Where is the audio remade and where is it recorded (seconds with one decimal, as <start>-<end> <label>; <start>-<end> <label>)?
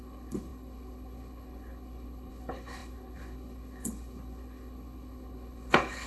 0.0-6.1 remade